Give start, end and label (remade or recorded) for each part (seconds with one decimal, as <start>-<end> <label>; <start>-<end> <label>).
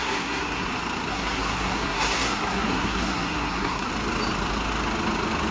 0.0-0.7 remade; 0.7-1.1 recorded; 1.1-3.9 remade; 3.9-5.5 recorded